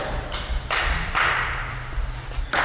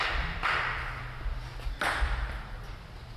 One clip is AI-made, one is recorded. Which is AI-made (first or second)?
first